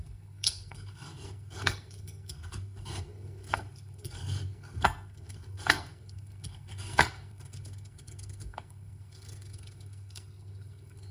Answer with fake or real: fake